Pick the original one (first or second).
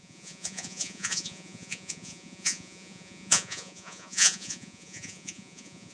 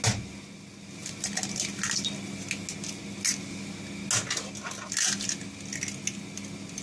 second